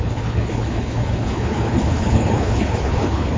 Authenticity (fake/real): fake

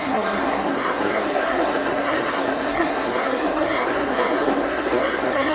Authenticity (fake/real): fake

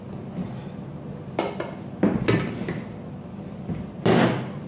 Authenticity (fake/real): real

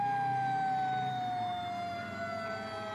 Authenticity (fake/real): real